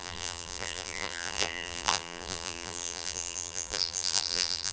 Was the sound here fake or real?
fake